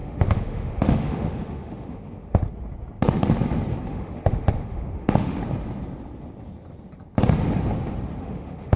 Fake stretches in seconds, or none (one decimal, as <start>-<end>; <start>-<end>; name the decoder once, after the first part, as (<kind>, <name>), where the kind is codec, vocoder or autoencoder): 0.0-2.4 (autoencoder, DAC-VAE); 3.9-5.4; 8.2-8.8